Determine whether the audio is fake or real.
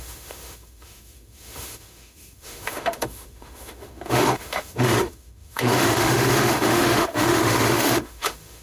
fake